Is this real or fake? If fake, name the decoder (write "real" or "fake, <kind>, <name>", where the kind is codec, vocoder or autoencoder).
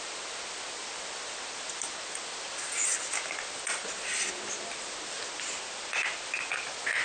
real